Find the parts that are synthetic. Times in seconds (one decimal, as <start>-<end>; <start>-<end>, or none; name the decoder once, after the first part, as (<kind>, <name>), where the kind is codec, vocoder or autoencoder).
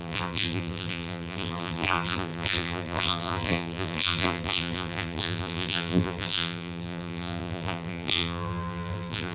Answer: 0.0-9.3 (vocoder, BigVGAN v2)